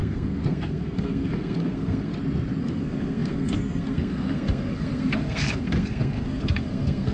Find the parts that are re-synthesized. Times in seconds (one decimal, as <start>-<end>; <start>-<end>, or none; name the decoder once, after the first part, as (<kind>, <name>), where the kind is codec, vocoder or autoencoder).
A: 0.0-2.1 (codec, SNAC); 2.6-7.1